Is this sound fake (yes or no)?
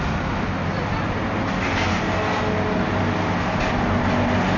no